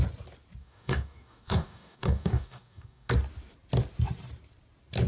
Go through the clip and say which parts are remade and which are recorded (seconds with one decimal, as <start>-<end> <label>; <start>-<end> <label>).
0.0-0.6 recorded; 0.6-3.1 remade; 3.1-5.1 recorded